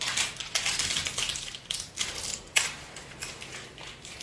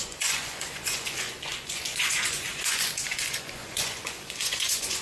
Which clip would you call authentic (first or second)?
first